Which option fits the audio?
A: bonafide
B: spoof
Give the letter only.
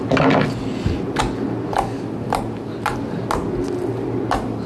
A